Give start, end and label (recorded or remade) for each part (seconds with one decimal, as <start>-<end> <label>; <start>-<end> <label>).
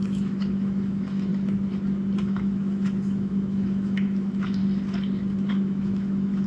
0.0-1.3 remade; 1.3-2.2 recorded; 2.2-4.6 remade; 4.6-5.5 recorded; 5.5-6.5 remade